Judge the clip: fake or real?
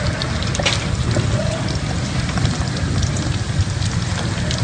real